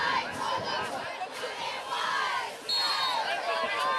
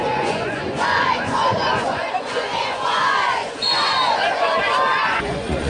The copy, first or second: second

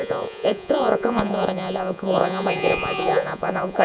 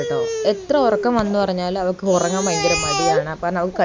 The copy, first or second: first